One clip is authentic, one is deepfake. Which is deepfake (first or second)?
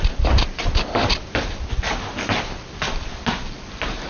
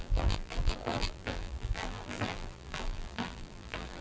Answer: second